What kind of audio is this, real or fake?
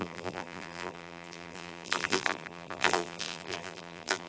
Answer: fake